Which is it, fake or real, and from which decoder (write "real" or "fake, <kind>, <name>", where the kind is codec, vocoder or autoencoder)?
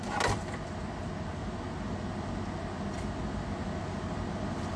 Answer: real